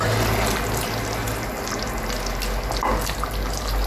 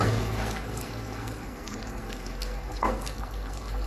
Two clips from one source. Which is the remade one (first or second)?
second